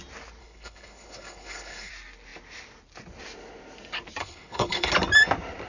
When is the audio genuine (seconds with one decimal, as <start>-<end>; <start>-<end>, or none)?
0.0-0.4; 1.9-4.2; 4.9-5.7